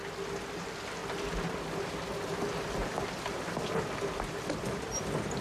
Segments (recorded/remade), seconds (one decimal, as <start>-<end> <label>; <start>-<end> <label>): 0.0-5.4 recorded